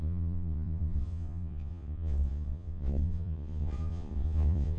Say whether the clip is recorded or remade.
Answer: remade